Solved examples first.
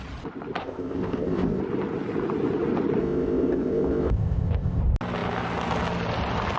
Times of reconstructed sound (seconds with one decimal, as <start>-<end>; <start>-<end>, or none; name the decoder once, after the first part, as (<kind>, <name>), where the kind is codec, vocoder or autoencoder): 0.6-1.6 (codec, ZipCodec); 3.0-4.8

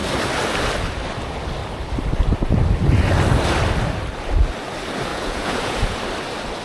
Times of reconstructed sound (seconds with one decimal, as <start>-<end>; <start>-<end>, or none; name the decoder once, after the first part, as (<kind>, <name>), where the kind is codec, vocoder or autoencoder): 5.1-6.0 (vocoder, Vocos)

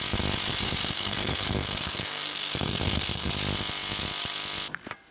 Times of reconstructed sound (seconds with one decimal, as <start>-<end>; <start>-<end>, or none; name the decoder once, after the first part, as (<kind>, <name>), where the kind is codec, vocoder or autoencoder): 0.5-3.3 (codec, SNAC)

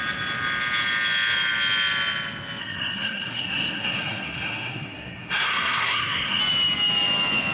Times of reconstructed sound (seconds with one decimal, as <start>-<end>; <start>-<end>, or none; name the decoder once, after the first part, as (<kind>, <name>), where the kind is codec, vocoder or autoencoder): 2.6-6.4 (codec, SNAC)